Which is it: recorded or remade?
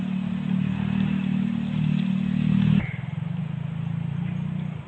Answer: recorded